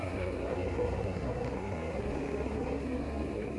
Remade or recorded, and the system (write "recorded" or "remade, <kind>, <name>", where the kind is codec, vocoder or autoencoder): remade, codec, SNAC